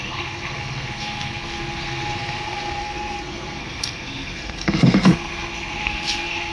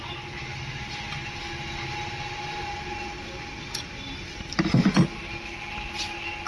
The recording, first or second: second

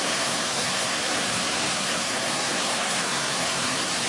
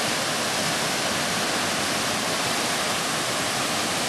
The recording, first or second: second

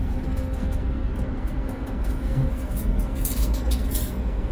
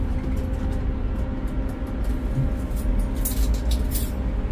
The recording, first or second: second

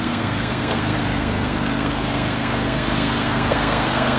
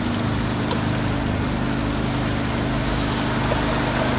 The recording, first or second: second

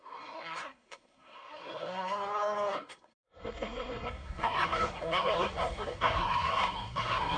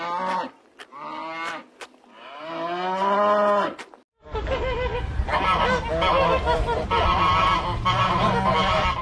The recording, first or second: second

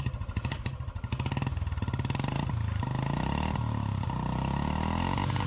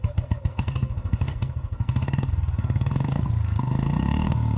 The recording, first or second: first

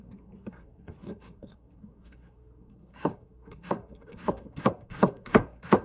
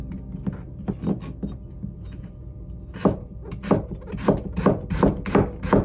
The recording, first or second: second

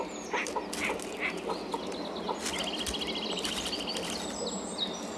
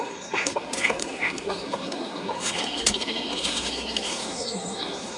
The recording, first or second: first